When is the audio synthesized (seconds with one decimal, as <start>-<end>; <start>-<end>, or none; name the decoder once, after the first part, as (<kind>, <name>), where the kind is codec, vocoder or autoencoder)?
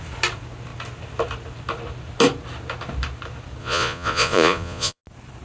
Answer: 3.6-5.0 (vocoder, Vocos)